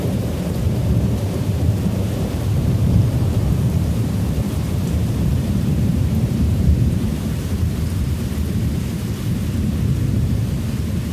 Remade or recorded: remade